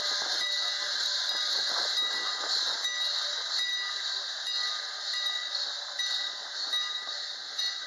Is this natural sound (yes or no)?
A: yes